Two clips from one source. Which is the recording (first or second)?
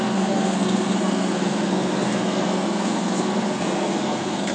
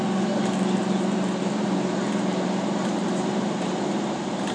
second